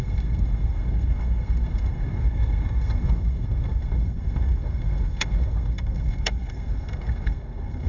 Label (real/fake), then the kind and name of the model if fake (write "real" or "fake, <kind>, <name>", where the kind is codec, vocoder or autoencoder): fake, codec, SNAC